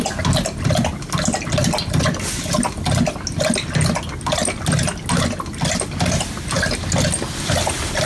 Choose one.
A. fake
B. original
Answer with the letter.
B